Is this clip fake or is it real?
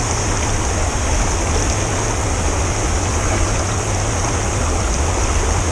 real